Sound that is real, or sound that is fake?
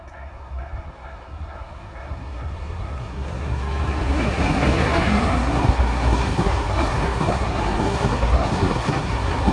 fake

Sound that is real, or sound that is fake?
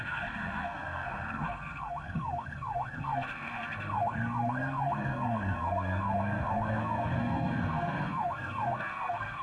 fake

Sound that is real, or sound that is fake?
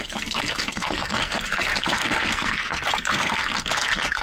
fake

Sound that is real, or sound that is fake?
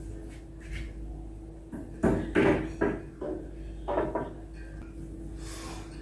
real